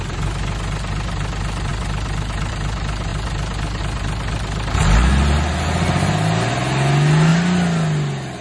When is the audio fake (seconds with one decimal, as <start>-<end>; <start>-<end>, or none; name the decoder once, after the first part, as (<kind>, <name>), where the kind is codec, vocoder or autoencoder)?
none